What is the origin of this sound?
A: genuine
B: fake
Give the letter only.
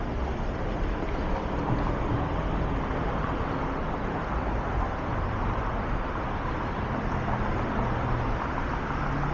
A